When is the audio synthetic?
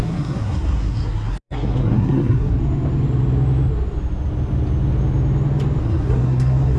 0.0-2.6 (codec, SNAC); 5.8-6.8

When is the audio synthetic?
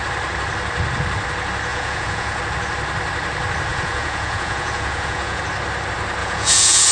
1.7-2.4 (vocoder, Vocos); 3.7-5.4; 6.2-6.9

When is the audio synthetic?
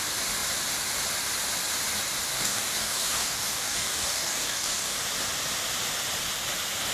2.3-5.0 (codec, DAC)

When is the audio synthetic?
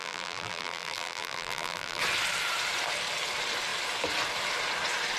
0.0-2.0 (vocoder, BigVGAN v2)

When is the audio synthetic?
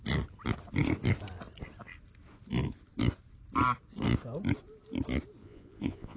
5.4-6.2 (vocoder, Vocos)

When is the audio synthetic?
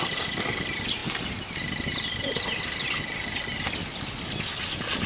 none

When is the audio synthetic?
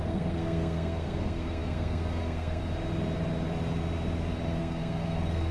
0.0-2.6 (codec, SNAC); 4.6-5.5